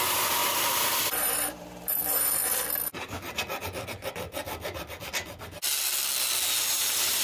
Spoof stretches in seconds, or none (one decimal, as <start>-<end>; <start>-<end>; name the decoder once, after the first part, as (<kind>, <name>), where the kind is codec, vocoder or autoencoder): 0.0-2.4 (vocoder, BigVGAN v2); 6.7-7.2